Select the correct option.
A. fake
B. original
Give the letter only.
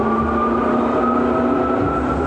B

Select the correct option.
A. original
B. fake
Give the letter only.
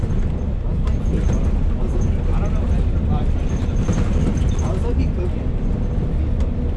A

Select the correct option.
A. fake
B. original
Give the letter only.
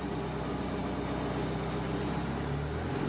B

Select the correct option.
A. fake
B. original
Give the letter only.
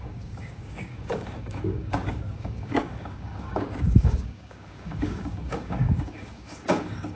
A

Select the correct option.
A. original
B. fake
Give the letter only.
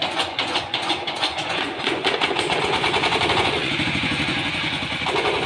B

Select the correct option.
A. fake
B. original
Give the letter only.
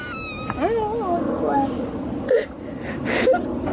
B